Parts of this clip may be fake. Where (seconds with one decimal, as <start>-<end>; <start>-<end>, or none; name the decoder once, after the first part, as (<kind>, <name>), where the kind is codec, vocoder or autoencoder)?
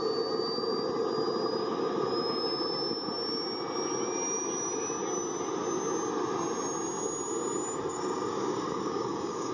7.9-9.5 (codec, DAC)